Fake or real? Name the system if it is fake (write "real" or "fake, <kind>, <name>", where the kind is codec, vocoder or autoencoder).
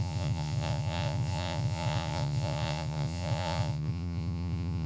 fake, vocoder, Vocos